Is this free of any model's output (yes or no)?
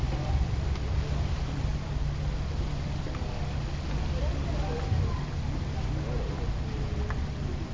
yes